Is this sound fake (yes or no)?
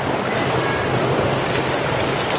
no